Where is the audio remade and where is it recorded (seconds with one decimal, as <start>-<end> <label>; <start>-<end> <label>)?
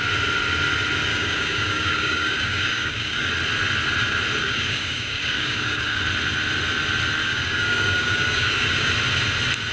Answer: 0.0-1.1 recorded; 1.1-3.3 remade; 3.3-4.4 recorded; 4.4-6.0 remade; 6.0-7.2 recorded; 7.2-8.9 remade; 8.9-9.7 recorded